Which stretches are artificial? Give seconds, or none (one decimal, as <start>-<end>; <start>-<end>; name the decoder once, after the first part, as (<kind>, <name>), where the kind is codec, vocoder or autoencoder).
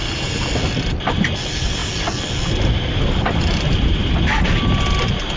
none